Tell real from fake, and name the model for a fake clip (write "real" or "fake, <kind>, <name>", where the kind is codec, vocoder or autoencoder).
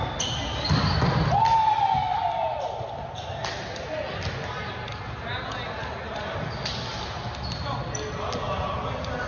real